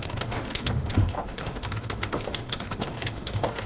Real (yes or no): no